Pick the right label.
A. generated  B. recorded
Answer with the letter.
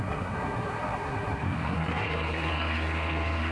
A